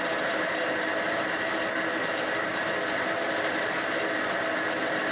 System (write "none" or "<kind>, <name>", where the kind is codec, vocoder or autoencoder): none